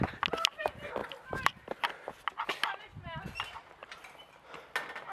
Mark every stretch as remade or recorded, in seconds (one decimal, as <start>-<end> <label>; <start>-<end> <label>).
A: 0.0-5.1 recorded